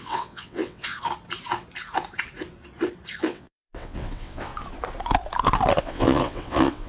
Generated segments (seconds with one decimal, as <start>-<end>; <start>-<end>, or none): 0.0-0.9; 3.2-4.5; 5.8-6.9